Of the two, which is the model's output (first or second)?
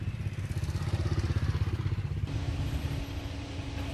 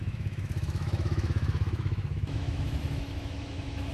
second